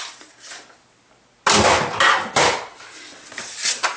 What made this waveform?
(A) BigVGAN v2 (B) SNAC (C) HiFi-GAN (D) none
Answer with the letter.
D